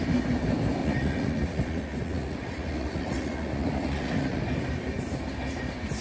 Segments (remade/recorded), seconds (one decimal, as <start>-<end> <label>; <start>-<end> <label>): 0.0-0.8 recorded; 0.8-4.4 remade; 4.4-6.0 recorded